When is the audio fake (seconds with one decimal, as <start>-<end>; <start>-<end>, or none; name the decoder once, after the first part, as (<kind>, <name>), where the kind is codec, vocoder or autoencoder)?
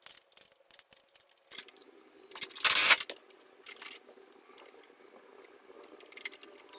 none